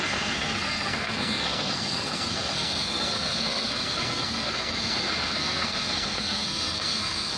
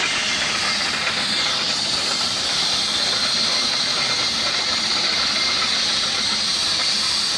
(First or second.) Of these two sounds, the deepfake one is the first